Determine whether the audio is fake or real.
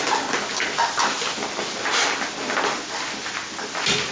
real